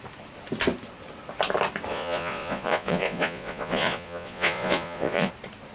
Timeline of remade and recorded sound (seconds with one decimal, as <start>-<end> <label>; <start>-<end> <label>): 0.0-1.9 recorded; 1.9-5.3 remade; 5.3-5.7 recorded